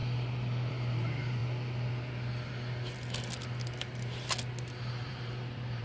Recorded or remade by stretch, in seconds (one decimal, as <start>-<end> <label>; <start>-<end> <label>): 0.0-0.7 recorded; 0.7-1.4 remade; 1.4-4.9 recorded; 4.9-5.8 remade